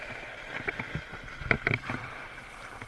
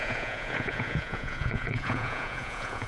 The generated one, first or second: second